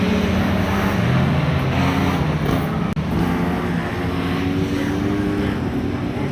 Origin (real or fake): real